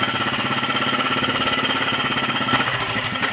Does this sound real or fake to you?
fake